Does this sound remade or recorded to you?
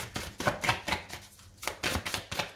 recorded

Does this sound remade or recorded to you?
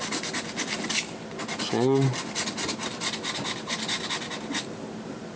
recorded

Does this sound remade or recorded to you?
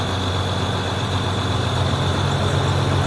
recorded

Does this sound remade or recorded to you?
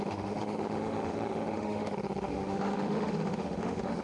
remade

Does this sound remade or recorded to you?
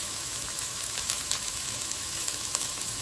remade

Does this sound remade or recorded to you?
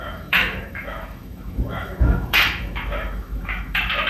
remade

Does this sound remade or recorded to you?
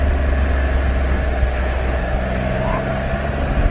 recorded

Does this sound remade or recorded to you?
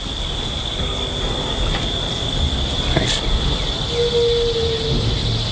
recorded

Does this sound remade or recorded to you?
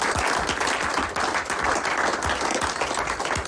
recorded